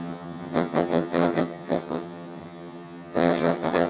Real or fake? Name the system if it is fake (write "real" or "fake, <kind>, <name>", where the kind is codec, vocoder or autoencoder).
fake, vocoder, HiFi-GAN